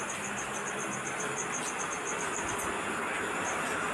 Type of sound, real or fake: real